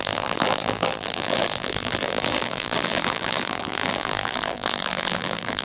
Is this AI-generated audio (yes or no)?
yes